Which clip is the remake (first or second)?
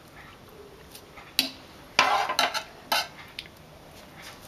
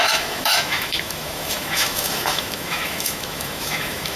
second